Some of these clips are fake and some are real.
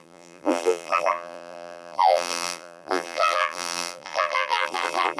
fake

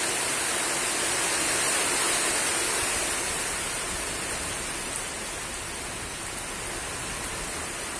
real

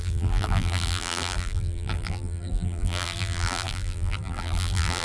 fake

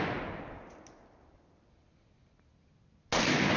real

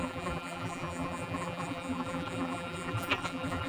fake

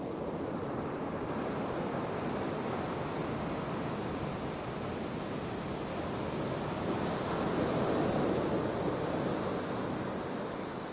real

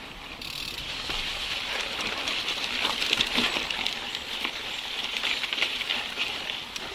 fake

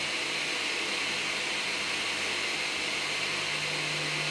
real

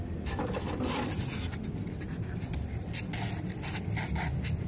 real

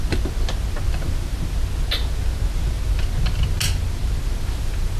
real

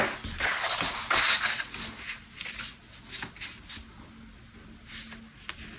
real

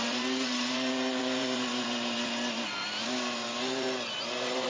fake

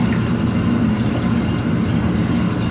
real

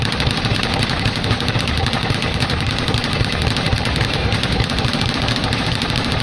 fake